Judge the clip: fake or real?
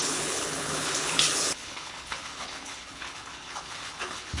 fake